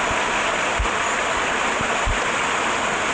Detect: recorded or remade recorded